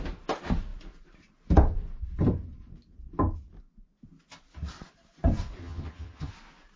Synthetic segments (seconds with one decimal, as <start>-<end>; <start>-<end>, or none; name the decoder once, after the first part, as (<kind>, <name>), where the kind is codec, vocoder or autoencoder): 5.6-6.3 (vocoder, HiFi-GAN)